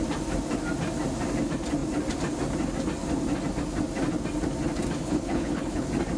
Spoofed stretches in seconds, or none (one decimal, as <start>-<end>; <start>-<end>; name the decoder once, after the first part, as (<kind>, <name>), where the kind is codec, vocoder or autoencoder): 5.0-5.8 (codec, HILCodec)